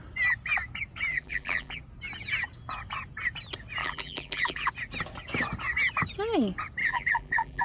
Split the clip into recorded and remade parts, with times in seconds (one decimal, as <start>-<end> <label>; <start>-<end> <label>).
0.0-1.1 recorded; 1.1-1.8 remade; 1.8-3.8 recorded; 3.8-4.7 remade; 4.7-6.8 recorded; 6.8-7.6 remade